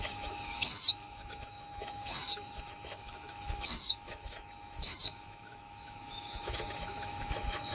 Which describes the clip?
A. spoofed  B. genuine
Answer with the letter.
A